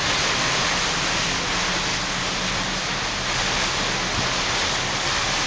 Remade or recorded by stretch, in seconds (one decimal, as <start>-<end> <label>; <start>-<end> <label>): 0.0-5.5 recorded